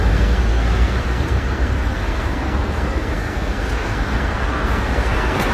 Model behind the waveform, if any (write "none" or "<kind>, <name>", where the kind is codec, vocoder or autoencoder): codec, SNAC